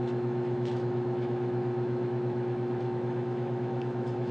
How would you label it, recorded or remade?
remade